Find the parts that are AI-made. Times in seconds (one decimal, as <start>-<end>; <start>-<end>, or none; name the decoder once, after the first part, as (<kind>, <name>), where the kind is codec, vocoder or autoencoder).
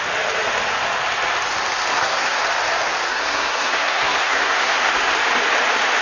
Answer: 1.9-2.4 (codec, SNAC); 3.1-4.9